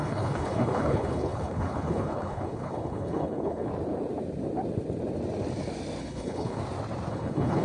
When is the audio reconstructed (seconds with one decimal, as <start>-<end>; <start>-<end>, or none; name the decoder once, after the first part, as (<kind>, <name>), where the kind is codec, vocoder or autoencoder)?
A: 0.0-3.7 (codec, HILCodec); 6.0-6.6; 7.1-7.6